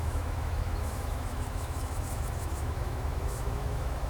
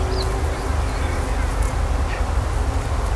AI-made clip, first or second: first